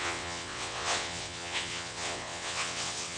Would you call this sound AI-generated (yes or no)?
yes